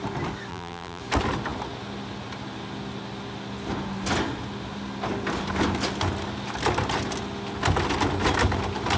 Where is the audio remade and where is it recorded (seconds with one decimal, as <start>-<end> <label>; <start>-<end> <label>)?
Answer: 0.0-0.5 recorded; 0.5-1.0 remade; 1.0-9.0 recorded